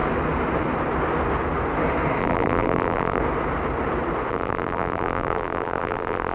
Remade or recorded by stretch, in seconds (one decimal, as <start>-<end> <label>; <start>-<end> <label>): 0.0-2.2 recorded; 2.2-3.2 remade; 3.2-4.3 recorded; 4.3-6.3 remade